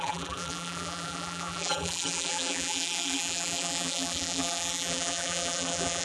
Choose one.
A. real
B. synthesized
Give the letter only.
B